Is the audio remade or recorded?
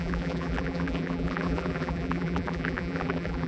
remade